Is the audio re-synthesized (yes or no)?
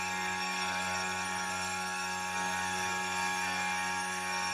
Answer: yes